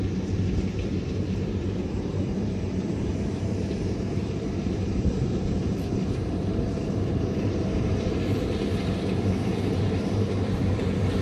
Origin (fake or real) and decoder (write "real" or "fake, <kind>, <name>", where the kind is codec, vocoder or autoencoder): fake, vocoder, BigVGAN v2